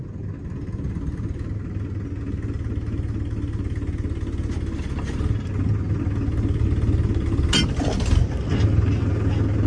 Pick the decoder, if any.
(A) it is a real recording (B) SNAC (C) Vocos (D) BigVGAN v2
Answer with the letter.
A